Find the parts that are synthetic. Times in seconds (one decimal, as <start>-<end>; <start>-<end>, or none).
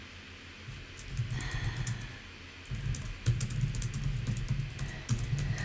none